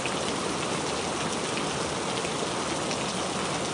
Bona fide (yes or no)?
yes